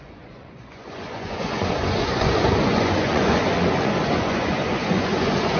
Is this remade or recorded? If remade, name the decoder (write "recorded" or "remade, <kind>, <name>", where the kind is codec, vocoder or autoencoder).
remade, vocoder, Vocos